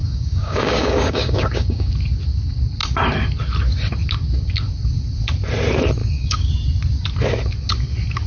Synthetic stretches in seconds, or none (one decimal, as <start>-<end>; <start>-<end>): 0.0-1.9; 6.0-6.5